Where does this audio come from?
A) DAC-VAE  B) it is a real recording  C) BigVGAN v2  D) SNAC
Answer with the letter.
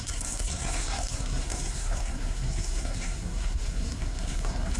D